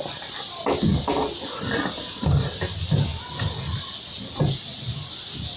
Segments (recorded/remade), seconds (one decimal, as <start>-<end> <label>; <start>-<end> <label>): 0.0-5.6 recorded